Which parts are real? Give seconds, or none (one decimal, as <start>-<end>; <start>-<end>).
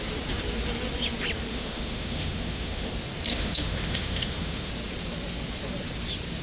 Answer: 0.0-1.5; 2.9-3.3; 4.7-6.4